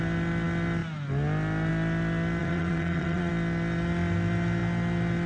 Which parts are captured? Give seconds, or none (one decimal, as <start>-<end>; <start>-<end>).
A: 0.0-2.4; 3.3-5.3

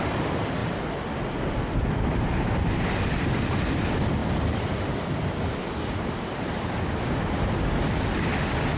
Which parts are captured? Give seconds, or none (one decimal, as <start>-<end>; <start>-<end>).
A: 0.0-4.2; 4.8-8.8

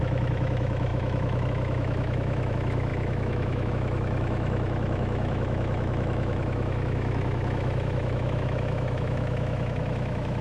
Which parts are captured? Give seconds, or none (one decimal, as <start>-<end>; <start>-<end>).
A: none

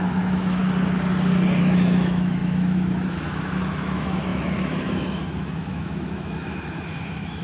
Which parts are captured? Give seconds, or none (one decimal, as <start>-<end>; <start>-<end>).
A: 0.6-1.6

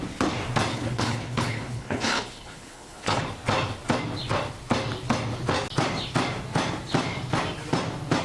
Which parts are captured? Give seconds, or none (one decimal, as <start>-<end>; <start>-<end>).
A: 0.0-0.7; 3.2-8.2

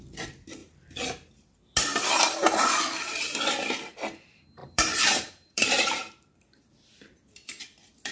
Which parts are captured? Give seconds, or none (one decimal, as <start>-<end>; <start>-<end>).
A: 0.0-0.6; 1.3-4.6; 6.4-8.1

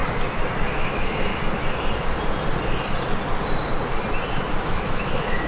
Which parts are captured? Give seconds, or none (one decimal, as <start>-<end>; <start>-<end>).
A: 0.0-0.7; 1.3-4.6

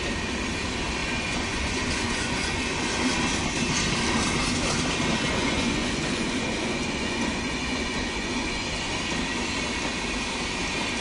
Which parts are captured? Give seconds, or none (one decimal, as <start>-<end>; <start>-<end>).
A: 0.0-1.0; 3.1-5.1; 8.9-11.0